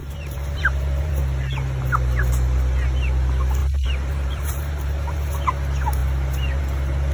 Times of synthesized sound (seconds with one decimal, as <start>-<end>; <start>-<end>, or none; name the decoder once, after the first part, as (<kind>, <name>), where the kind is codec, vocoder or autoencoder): 0.0-1.2 (vocoder, BigVGAN v2); 3.6-5.3